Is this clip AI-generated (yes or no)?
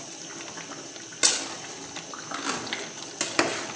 no